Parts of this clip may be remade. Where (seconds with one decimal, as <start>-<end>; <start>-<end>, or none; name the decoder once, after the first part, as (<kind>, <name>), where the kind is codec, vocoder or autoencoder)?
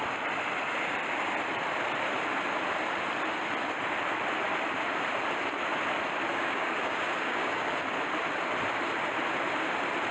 6.3-7.7 (codec, DAC)